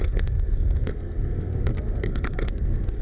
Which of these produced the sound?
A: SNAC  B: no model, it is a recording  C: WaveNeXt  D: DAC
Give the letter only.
A